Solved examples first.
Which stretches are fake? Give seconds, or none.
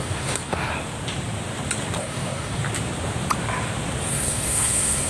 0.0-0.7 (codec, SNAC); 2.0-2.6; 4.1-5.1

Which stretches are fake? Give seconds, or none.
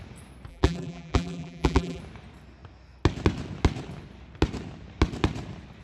0.5-2.0 (vocoder, BigVGAN v2)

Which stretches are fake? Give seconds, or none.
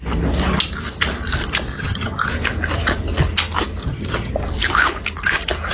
1.7-2.3 (vocoder, HiFi-GAN); 3.8-4.3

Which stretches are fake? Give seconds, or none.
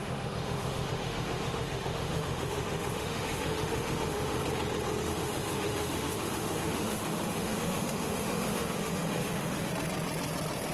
0.0-4.4 (autoencoder, DAC-VAE); 5.0-9.7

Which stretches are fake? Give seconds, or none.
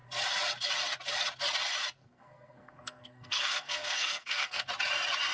2.0-4.6 (codec, SNAC)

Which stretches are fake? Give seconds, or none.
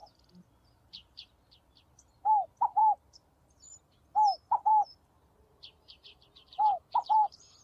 0.0-7.6 (vocoder, BigVGAN v2)